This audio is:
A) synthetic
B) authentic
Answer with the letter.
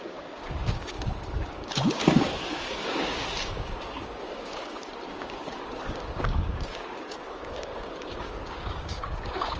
A